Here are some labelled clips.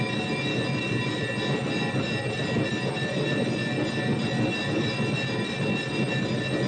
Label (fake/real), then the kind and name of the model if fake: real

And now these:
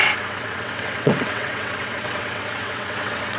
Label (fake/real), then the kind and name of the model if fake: fake, vocoder, WaveNeXt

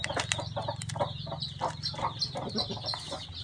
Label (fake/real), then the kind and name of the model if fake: real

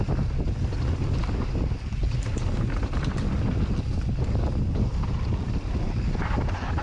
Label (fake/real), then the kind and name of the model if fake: real